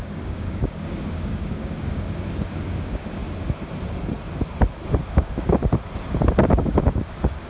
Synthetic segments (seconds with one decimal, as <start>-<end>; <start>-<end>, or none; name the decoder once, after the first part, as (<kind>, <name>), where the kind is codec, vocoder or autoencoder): 0.0-3.2 (codec, DAC); 5.1-5.6; 6.5-7.5